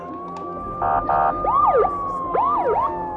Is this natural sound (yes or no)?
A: yes